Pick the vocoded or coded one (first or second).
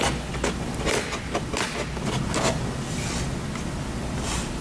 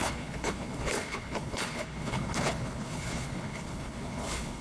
second